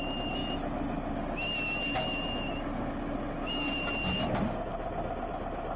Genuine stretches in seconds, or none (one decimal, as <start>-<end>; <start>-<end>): 0.0-5.8